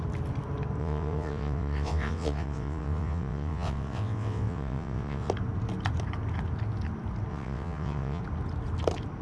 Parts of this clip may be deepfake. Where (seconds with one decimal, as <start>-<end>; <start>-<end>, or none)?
0.8-5.3; 7.3-8.2